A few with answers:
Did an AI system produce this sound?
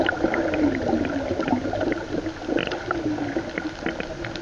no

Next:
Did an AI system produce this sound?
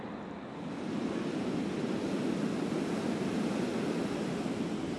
no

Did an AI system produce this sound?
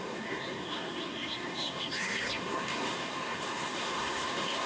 yes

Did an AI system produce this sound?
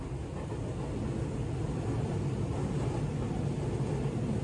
no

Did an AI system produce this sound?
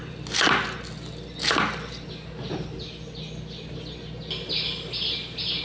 no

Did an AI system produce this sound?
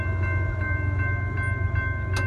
no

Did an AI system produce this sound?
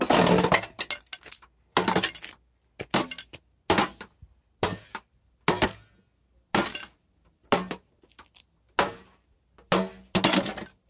no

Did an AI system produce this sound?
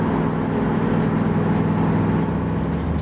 no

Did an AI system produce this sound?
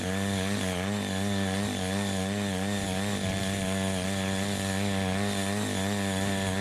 no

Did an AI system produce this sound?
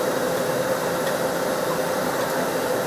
no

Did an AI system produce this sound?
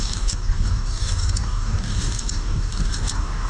yes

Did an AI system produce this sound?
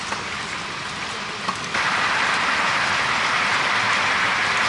no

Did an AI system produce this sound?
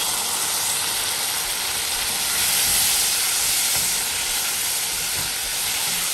no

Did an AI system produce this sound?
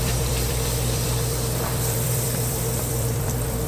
yes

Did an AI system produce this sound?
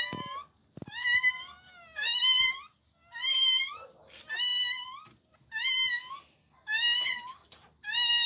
no